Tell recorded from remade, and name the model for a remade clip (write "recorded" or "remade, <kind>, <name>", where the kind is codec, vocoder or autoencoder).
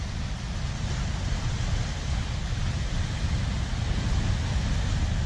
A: recorded